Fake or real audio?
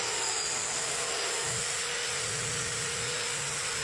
real